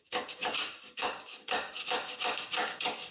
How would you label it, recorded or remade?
remade